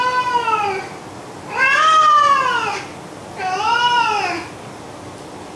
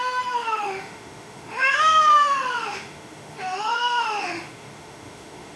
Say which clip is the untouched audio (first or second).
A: first